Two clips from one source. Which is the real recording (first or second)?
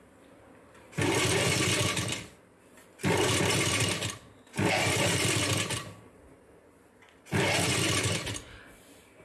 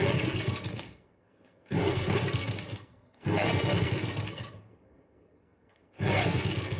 first